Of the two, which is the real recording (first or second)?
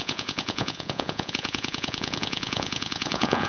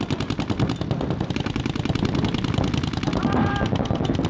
second